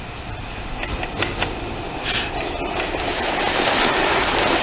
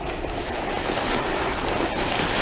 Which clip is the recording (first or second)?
second